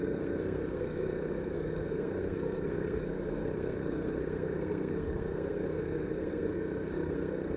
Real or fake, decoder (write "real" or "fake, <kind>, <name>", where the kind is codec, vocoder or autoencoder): fake, codec, SNAC